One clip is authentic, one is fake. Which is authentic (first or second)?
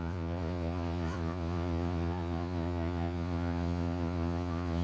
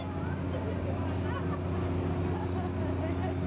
second